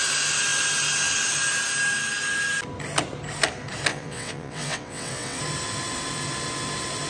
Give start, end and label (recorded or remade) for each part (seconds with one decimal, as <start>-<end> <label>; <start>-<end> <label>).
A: 0.0-3.9 recorded; 3.9-5.4 remade; 5.4-7.1 recorded